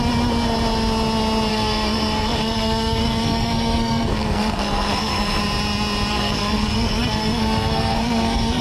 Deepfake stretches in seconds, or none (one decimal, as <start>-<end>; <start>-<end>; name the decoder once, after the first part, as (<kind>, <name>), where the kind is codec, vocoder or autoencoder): 1.5-5.4 (codec, SNAC); 6.1-8.6

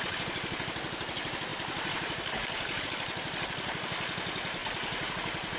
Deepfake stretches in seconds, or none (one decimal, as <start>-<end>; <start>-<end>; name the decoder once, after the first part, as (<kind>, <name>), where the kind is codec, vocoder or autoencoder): 1.5-2.8 (vocoder, BigVGAN v2); 4.6-5.1

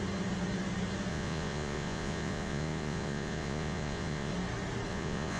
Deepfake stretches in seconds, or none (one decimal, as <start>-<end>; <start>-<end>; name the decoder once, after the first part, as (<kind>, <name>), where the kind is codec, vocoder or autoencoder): 1.1-4.3 (vocoder, Vocos); 4.9-5.4

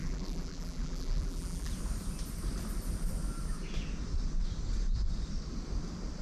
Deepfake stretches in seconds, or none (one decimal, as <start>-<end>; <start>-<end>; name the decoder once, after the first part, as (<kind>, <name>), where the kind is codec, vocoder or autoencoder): 0.0-1.7 (vocoder, BigVGAN v2)

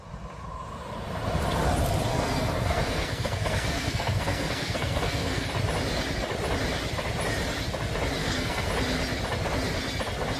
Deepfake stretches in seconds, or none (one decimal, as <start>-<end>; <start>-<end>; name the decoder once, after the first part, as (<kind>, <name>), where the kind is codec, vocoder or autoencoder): 2.1-5.5 (codec, SNAC); 8.2-8.7

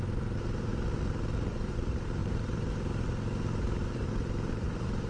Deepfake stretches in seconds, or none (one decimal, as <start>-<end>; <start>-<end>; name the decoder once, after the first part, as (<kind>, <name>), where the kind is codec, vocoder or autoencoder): 0.0-0.7 (vocoder, BigVGAN v2); 1.5-5.1